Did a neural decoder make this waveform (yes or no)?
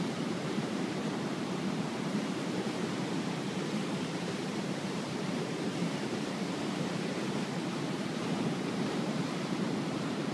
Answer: yes